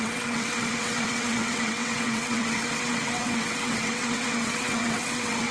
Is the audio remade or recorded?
remade